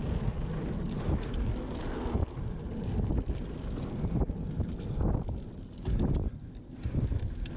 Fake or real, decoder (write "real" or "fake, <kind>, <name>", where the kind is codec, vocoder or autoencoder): real